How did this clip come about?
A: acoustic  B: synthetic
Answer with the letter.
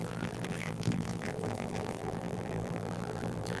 B